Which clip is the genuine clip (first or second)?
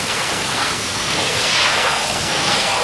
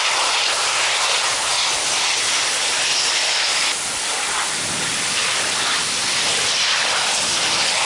second